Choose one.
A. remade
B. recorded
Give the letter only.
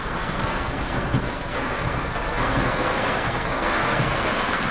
A